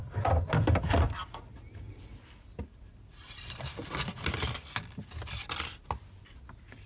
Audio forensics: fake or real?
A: real